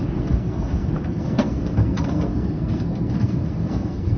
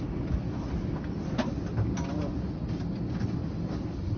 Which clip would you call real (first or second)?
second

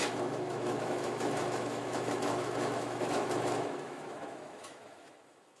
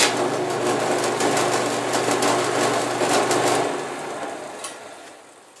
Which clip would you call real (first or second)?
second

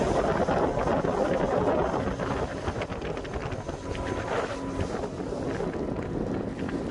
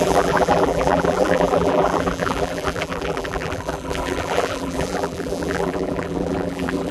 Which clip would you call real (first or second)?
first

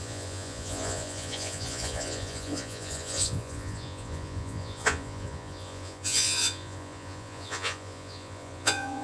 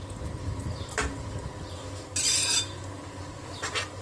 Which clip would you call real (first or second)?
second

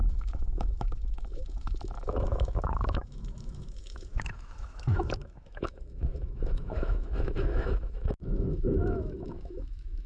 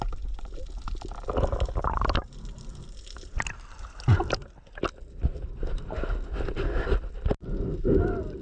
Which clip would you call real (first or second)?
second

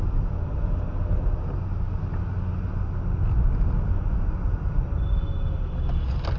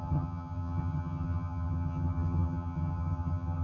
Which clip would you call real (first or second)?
first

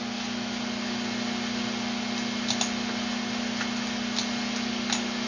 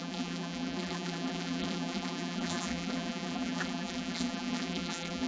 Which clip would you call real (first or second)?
first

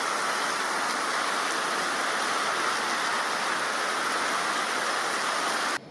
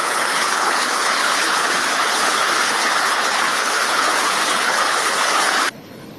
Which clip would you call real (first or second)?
first